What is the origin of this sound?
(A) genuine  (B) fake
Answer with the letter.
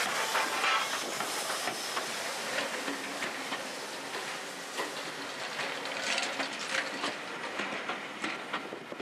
A